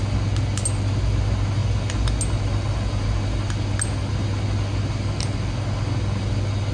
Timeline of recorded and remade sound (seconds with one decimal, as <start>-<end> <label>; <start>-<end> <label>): 0.0-6.7 recorded